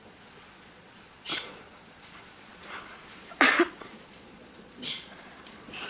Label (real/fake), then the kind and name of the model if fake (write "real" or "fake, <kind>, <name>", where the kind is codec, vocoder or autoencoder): fake, vocoder, Vocos